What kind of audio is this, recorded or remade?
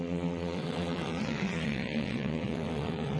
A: remade